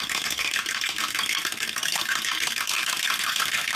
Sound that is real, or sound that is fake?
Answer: fake